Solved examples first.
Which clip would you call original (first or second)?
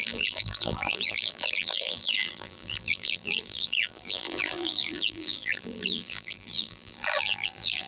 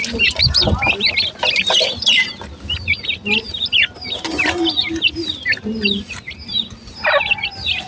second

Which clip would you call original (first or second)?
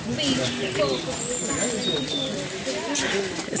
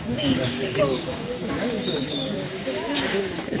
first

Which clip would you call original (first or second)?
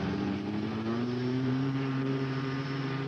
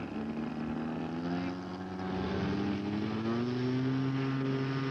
second